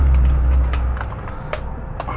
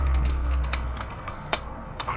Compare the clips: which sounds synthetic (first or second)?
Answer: second